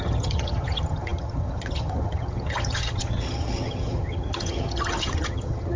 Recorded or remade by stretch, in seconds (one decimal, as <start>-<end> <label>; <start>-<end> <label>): 0.0-5.8 remade